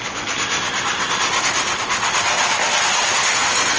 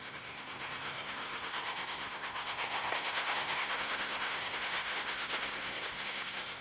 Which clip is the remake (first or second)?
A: second